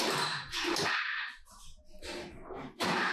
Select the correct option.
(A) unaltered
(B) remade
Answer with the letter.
B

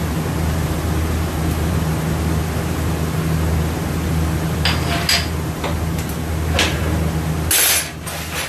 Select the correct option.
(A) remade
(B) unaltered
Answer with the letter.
B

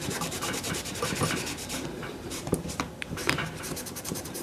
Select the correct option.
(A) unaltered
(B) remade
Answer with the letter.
B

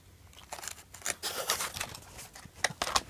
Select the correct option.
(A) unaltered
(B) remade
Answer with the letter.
A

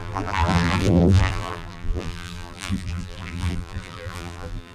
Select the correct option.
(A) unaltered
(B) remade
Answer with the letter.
B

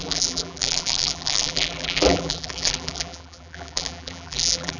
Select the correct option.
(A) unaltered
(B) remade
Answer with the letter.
B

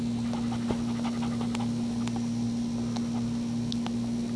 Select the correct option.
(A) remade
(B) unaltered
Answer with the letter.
B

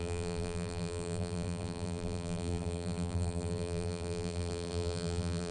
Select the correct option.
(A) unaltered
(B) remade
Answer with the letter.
B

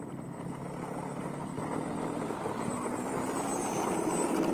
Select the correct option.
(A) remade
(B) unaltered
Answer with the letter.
B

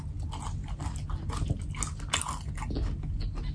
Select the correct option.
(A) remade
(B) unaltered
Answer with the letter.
B